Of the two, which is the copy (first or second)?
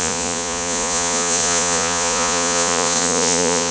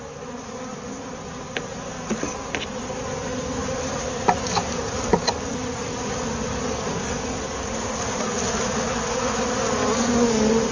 first